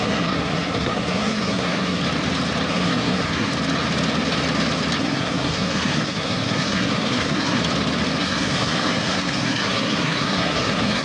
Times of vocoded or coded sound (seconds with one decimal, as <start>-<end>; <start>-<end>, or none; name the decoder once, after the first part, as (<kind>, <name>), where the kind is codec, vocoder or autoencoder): 0.0-2.0 (codec, SNAC); 2.7-3.5; 5.0-7.6; 8.2-11.0